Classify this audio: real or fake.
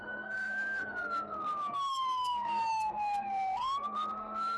fake